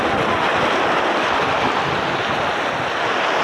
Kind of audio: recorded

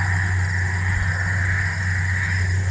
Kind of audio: recorded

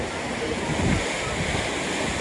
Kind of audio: recorded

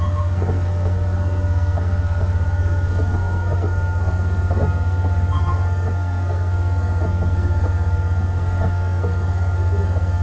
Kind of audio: remade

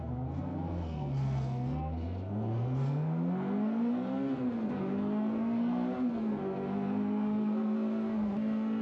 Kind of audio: remade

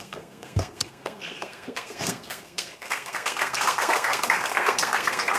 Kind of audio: remade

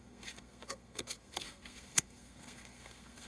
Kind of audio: remade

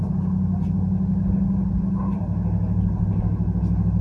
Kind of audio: recorded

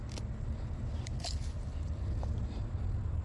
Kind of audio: recorded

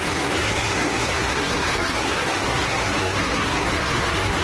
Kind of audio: remade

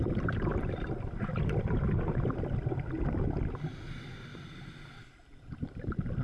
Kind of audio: recorded